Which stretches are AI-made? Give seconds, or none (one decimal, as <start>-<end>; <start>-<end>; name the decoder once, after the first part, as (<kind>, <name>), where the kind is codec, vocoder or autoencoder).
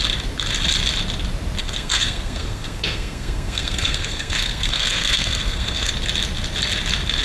1.6-5.9 (codec, SNAC)